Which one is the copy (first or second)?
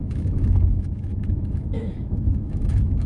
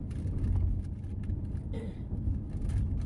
first